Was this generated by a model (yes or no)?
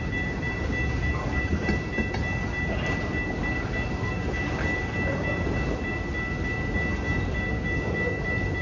no